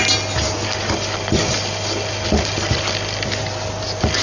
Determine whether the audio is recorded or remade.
recorded